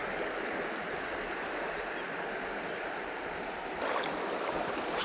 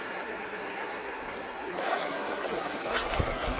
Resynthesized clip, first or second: second